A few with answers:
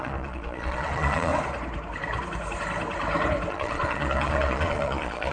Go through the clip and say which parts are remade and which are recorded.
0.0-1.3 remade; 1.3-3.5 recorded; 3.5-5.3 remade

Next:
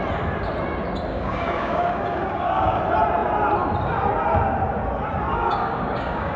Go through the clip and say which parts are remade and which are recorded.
0.0-1.1 recorded; 1.1-2.8 remade; 2.8-5.3 recorded; 5.3-6.4 remade